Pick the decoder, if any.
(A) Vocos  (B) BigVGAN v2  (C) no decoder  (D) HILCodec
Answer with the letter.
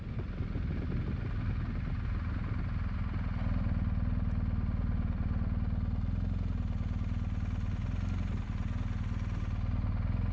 C